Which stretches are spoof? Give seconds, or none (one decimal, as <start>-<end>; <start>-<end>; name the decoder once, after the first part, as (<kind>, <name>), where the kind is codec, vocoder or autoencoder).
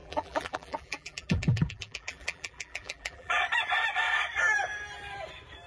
0.0-3.4 (vocoder, BigVGAN v2)